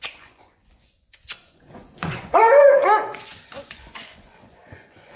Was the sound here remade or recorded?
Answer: remade